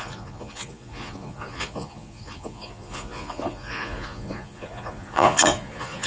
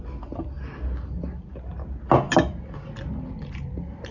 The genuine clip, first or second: second